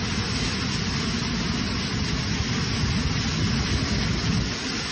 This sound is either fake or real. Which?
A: real